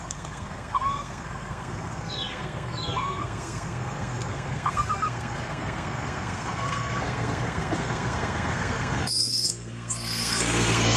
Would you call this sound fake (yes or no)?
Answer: yes